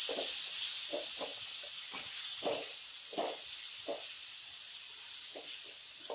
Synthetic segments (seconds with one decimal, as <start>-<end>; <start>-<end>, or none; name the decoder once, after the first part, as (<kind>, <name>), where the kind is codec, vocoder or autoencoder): none

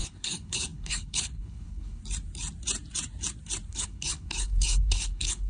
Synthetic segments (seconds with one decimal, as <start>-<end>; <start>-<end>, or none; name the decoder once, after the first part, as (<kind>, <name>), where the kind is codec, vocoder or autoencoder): 0.0-2.0 (codec, HILCodec); 3.7-5.5